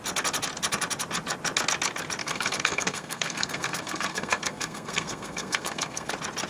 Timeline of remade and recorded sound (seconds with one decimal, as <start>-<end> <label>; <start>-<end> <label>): 0.0-2.2 recorded; 2.2-6.1 remade; 6.1-6.5 recorded